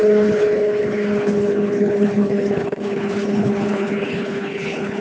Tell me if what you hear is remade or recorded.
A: remade